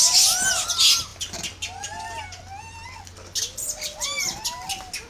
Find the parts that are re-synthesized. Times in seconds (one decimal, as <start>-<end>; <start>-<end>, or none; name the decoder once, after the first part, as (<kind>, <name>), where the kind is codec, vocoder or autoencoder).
none